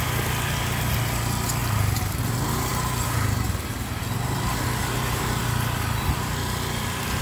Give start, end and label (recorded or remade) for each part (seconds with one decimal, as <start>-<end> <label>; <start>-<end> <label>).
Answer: 0.0-1.6 recorded; 1.6-2.1 remade; 2.1-2.7 recorded; 2.7-3.4 remade; 3.4-4.8 recorded; 4.8-5.4 remade; 5.4-7.2 recorded